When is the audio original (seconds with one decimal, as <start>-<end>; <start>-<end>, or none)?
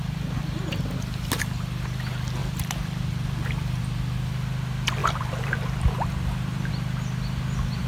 0.0-2.4; 3.8-5.0; 6.7-7.9